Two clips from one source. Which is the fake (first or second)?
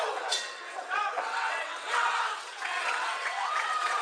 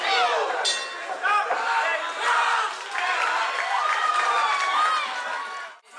first